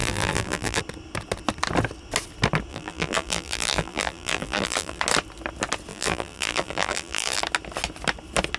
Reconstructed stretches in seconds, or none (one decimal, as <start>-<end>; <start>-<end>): 0.0-0.8; 2.7-5.0; 5.9-7.4